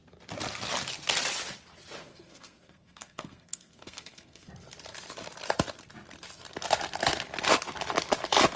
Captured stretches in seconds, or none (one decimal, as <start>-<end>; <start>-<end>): 0.0-2.1; 4.5-8.6